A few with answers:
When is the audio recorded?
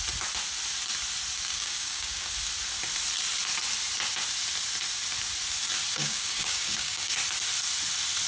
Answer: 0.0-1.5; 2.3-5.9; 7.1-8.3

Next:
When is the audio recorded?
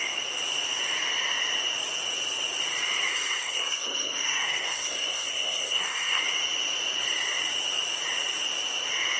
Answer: 0.0-3.1; 6.2-9.2